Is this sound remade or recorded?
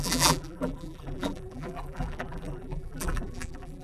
remade